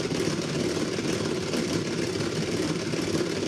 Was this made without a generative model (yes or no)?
no